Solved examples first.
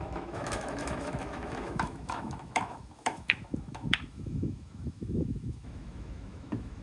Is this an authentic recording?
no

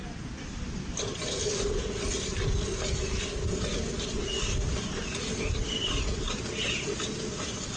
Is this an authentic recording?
yes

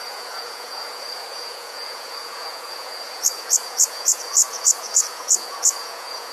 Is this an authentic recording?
no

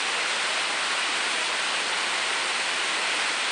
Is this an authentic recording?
yes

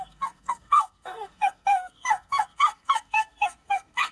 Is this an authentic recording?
no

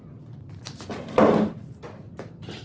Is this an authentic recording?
yes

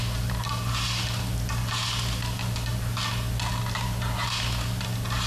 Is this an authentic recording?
yes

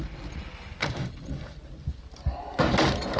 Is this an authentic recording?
yes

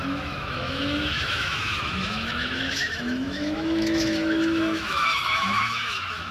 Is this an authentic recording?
no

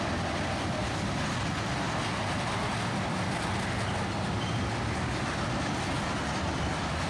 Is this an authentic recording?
yes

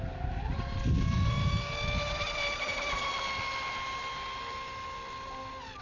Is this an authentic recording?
yes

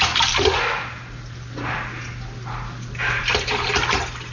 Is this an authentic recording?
yes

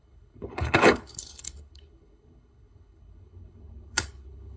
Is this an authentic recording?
no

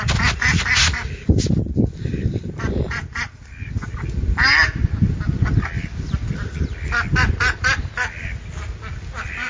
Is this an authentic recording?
yes